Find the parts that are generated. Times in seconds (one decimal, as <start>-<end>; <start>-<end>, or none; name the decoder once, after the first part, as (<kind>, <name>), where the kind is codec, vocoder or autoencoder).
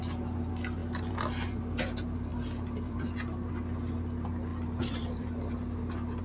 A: 0.8-1.6 (vocoder, BigVGAN v2); 2.3-3.5; 4.5-6.2